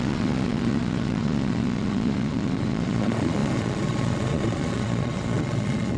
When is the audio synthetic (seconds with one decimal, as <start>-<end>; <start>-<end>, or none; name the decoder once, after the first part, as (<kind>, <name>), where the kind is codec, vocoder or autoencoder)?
0.0-6.0 (vocoder, Vocos)